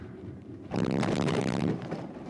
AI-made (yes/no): yes